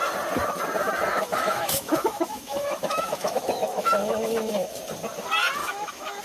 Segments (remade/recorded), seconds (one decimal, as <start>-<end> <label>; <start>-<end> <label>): 0.0-1.1 recorded; 1.1-4.8 remade; 4.8-5.6 recorded; 5.6-6.2 remade